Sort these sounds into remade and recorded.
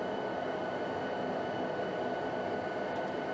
recorded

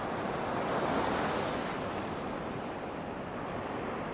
recorded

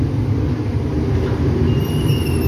recorded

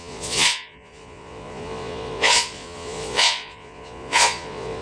remade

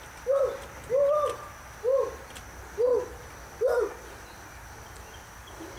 recorded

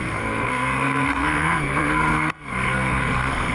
remade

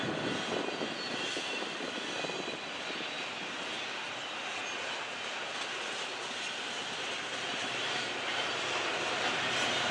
recorded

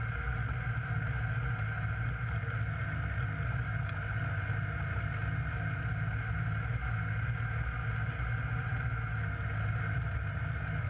recorded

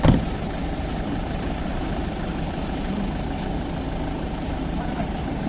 remade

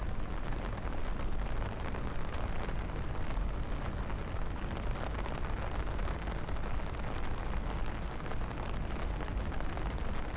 recorded